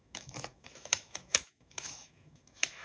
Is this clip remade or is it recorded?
remade